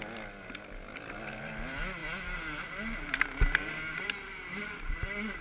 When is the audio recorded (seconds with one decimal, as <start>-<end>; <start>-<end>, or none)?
0.0-5.4